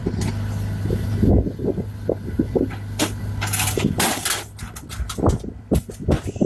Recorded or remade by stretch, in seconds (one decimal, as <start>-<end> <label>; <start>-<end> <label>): 0.0-6.5 recorded